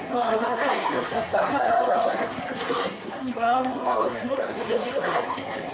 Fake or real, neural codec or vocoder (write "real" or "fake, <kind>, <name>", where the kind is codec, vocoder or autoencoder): fake, codec, SNAC